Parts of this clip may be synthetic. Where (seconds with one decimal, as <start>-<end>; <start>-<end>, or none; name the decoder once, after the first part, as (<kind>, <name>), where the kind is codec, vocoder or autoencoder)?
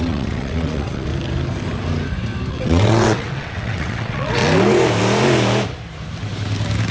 0.0-1.1 (vocoder, WaveNeXt); 2.5-4.4